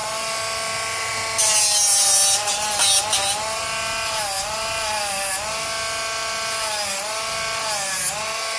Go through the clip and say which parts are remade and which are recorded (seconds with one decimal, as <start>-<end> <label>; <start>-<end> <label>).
0.0-8.6 recorded